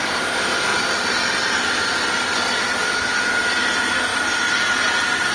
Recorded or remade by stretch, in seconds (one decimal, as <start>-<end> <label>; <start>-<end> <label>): 0.0-2.8 recorded; 2.8-3.3 remade; 3.3-5.3 recorded